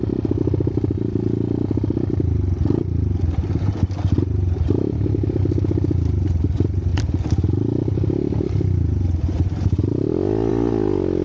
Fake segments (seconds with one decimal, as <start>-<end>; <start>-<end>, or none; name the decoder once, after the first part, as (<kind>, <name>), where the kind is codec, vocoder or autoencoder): none